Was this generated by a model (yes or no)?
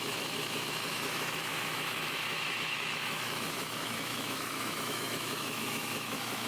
yes